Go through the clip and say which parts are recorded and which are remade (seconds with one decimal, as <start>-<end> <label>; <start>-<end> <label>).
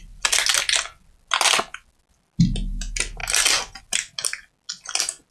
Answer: 0.0-5.3 recorded